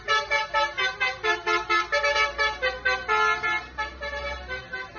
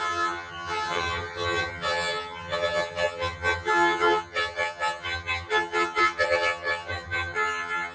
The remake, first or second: second